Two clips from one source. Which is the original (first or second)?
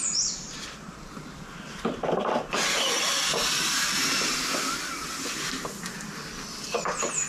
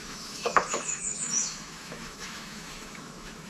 first